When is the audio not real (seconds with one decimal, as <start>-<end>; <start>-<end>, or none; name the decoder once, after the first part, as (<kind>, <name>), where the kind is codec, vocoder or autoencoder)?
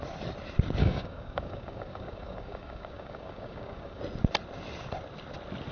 0.8-4.0 (codec, DAC)